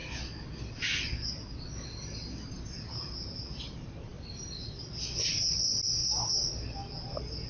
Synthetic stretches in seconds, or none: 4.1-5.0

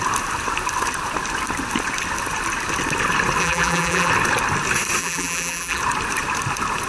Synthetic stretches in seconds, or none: 3.4-4.1; 5.0-5.8